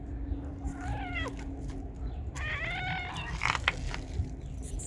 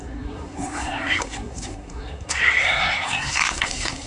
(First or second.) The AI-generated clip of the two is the second